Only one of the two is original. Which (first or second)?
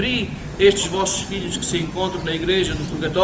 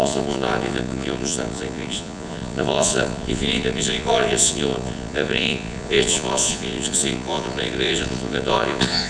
first